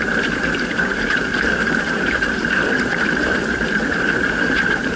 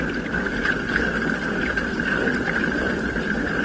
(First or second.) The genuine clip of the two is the second